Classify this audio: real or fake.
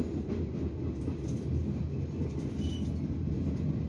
real